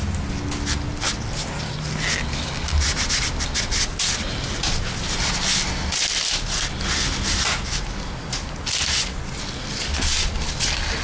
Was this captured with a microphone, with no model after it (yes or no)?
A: yes